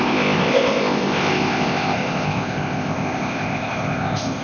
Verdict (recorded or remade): remade